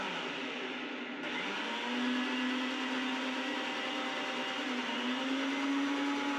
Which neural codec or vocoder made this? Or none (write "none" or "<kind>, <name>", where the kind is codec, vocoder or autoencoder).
none